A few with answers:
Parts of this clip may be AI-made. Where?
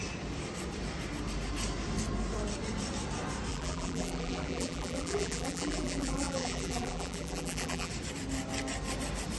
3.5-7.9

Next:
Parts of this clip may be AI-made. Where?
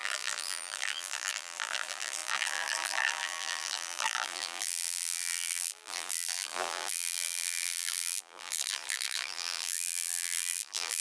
0.0-11.0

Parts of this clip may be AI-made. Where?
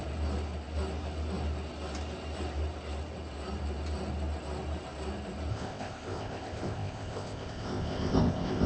5.5-8.7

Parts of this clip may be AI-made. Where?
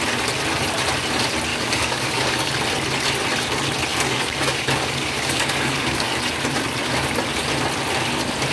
1.5-2.5; 3.9-6.1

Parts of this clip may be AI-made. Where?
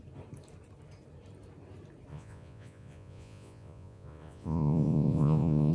2.1-5.7